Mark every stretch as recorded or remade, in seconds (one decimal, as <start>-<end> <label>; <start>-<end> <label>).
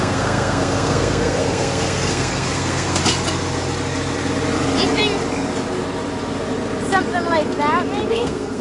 0.0-3.0 remade; 3.0-8.1 recorded; 8.1-8.6 remade